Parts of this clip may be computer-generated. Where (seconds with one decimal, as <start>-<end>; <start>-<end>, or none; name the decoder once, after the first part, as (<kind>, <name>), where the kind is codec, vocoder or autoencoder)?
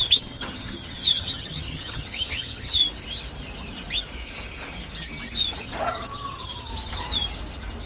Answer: 0.0-2.8 (vocoder, HiFi-GAN); 5.6-6.7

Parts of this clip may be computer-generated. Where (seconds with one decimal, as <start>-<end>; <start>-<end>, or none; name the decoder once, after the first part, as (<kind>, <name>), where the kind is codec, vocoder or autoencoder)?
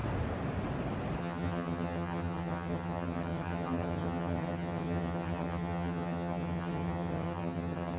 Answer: 1.2-8.0 (vocoder, HiFi-GAN)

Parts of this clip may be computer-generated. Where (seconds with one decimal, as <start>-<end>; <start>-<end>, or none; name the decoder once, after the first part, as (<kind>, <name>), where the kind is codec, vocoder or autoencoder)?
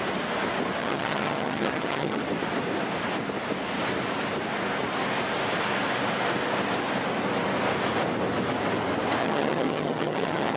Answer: 0.8-2.2 (vocoder, HiFi-GAN); 9.2-10.6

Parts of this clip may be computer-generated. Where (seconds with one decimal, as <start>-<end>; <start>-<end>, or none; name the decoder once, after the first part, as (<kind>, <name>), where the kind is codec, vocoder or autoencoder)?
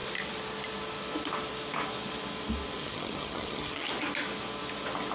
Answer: 2.8-3.9 (vocoder, HiFi-GAN)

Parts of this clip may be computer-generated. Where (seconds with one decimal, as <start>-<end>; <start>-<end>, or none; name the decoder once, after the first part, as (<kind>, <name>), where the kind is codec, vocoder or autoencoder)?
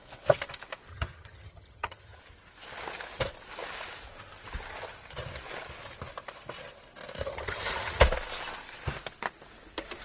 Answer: 0.9-2.2 (vocoder, HiFi-GAN); 7.2-8.0